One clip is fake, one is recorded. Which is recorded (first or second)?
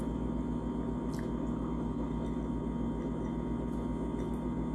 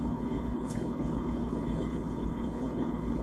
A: first